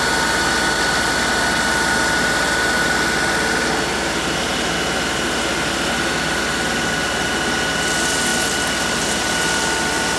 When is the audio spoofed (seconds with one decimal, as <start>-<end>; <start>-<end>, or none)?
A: none